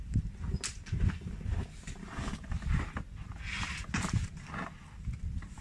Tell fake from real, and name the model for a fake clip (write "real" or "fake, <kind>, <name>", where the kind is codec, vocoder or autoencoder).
real